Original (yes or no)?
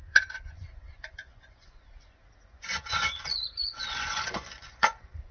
no